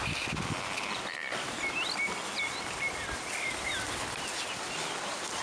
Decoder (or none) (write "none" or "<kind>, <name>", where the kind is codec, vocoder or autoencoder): none